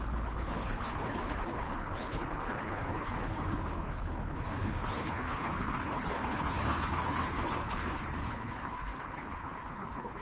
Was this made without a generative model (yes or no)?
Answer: no